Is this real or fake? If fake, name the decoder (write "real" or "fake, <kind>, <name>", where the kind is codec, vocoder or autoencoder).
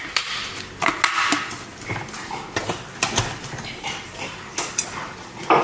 real